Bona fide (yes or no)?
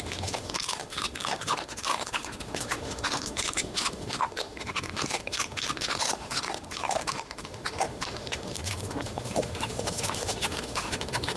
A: no